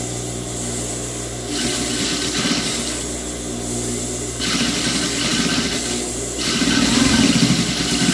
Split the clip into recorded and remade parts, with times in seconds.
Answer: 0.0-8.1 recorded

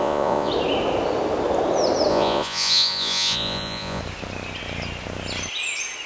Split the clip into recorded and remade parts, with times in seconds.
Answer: 0.0-0.5 remade; 0.5-2.1 recorded; 2.1-4.0 remade; 4.0-6.1 recorded